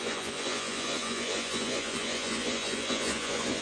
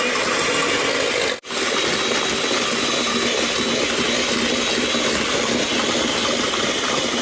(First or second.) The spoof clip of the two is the first